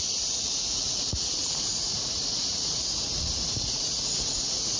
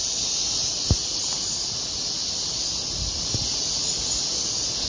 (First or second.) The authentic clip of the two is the second